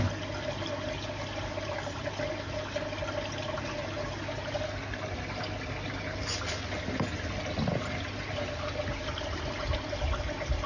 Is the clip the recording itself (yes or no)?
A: yes